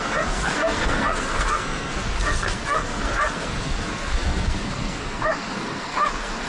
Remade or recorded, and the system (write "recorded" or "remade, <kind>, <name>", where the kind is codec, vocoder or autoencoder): remade, codec, SNAC